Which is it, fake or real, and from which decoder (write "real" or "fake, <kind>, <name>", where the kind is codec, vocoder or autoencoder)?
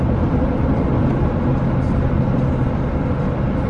real